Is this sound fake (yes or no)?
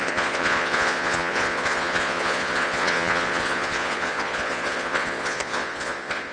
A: yes